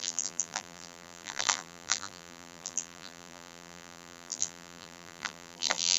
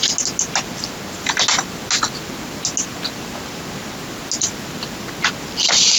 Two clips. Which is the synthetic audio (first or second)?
first